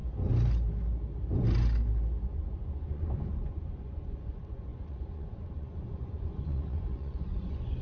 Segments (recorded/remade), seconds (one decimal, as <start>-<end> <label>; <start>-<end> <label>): 0.0-2.2 recorded; 2.2-7.8 remade

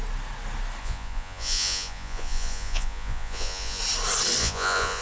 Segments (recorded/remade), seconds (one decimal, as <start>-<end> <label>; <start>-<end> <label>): 0.0-0.8 recorded; 0.8-3.8 remade; 3.8-4.4 recorded; 4.4-5.0 remade

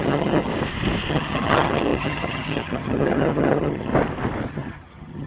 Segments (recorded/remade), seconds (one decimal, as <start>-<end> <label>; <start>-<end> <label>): 0.0-0.5 remade; 0.5-1.1 recorded; 1.1-3.9 remade; 3.9-4.5 recorded; 4.5-5.3 remade

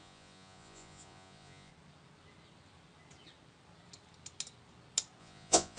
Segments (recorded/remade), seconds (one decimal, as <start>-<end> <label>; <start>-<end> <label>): 0.0-1.7 remade; 1.7-5.2 recorded; 5.2-5.8 remade

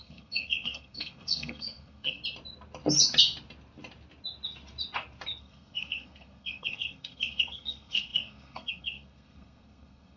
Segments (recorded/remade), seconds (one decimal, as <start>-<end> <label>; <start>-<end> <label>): 0.0-2.2 remade; 2.2-5.4 recorded; 5.4-10.2 remade

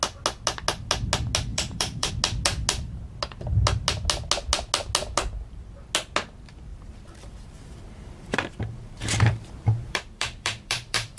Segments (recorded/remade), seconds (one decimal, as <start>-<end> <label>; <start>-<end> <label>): 0.0-1.5 recorded; 1.5-2.1 remade; 2.1-6.7 recorded; 6.7-11.2 remade

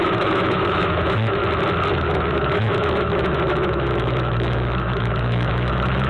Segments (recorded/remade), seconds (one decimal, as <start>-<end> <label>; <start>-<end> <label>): 0.0-1.4 remade; 1.4-1.9 recorded; 1.9-6.1 remade

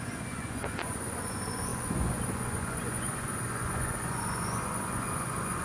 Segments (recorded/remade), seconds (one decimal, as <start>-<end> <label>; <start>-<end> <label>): 0.0-5.6 remade